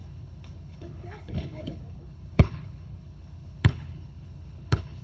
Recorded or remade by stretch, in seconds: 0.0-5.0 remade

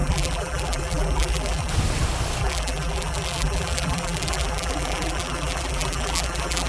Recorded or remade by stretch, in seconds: 0.0-1.7 remade; 1.7-2.4 recorded; 2.4-6.7 remade

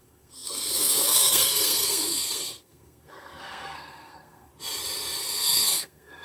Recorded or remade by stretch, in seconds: 0.0-4.5 remade; 4.5-5.2 recorded; 5.2-6.2 remade

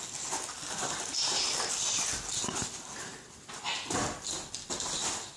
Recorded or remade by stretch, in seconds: 0.0-3.1 recorded; 3.1-3.7 remade; 3.7-5.4 recorded

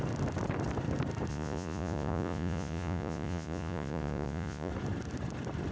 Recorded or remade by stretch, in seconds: 0.0-1.3 recorded; 1.3-4.7 remade; 4.7-5.7 recorded